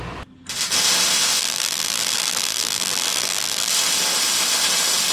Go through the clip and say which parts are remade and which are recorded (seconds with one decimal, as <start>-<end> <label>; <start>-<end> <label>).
0.0-1.4 recorded; 1.4-3.7 remade; 3.7-5.1 recorded